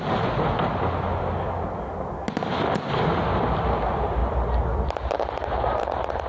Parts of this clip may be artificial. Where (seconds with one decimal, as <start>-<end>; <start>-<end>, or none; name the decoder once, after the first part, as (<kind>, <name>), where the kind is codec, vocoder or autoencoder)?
3.4-4.2 (vocoder, BigVGAN v2); 5.3-6.3